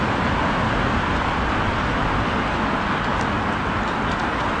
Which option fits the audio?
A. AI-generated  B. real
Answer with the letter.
B